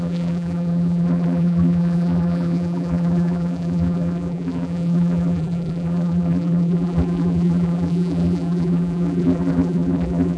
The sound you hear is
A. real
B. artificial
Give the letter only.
B